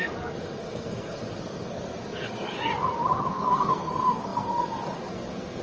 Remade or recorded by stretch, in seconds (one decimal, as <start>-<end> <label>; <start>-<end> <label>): 0.0-2.7 remade; 2.7-3.3 recorded; 3.3-5.6 remade